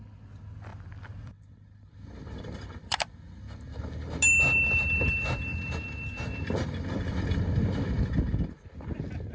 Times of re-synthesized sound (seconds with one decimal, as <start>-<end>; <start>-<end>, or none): 0.7-3.9; 5.5-7.4